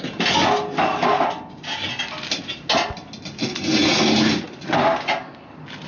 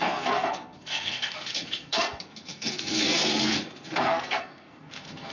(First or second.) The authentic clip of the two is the first